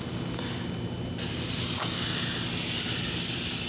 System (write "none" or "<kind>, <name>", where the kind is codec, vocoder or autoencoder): none